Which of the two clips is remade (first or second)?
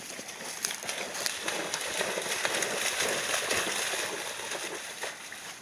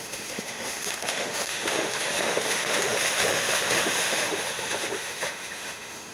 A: second